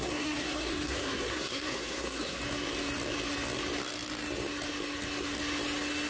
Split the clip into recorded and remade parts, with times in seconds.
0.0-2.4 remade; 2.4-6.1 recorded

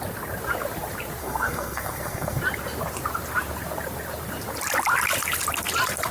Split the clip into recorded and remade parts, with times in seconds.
0.0-1.2 recorded; 1.2-2.4 remade; 2.4-6.1 recorded

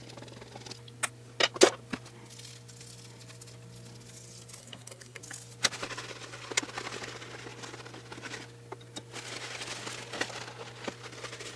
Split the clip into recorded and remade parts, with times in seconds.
0.0-4.6 recorded; 4.6-5.2 remade; 5.2-11.6 recorded